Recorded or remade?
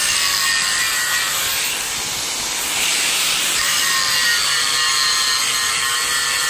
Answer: recorded